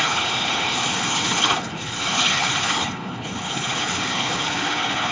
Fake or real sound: fake